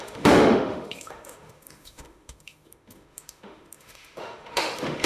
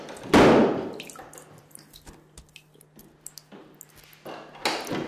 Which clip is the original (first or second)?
second